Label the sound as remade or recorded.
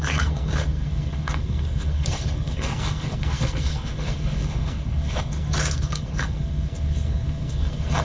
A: remade